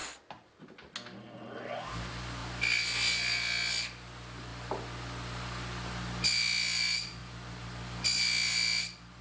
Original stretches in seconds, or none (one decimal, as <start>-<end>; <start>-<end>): 0.0-9.2